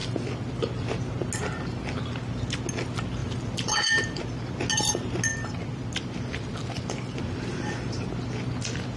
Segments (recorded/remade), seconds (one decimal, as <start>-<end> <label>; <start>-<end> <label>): 0.0-0.6 remade; 0.6-3.2 recorded; 3.2-4.2 remade; 4.2-5.3 recorded; 5.3-7.2 remade; 7.2-9.0 recorded

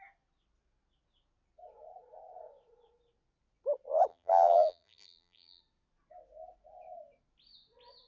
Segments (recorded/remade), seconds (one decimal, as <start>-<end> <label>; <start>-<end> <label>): 0.0-4.1 recorded; 4.1-5.6 remade; 5.6-8.1 recorded